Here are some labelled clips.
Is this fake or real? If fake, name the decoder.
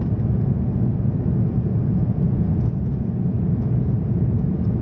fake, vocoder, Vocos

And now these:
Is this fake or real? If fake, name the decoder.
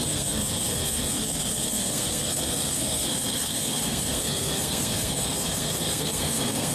fake, codec, SNAC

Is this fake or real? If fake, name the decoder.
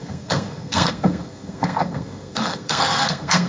fake, codec, SNAC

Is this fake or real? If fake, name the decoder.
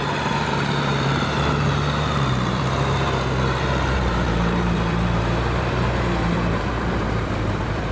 fake, vocoder, BigVGAN v2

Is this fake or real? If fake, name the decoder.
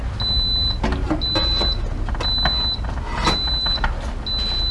real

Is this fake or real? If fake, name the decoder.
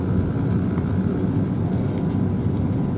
real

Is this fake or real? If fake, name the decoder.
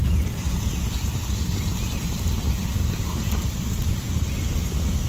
real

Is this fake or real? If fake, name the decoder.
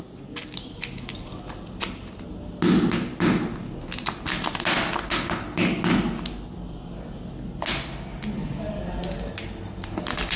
real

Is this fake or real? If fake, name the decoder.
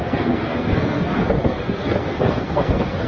fake, codec, SNAC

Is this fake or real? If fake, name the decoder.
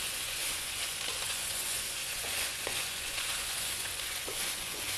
fake, vocoder, Vocos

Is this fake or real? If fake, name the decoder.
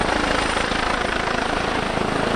real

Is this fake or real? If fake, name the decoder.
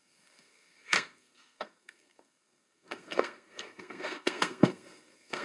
fake, codec, SNAC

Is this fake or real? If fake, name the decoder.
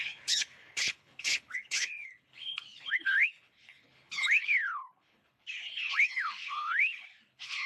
fake, codec, HILCodec